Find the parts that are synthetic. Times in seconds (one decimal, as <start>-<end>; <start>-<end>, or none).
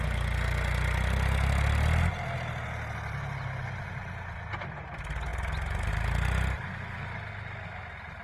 none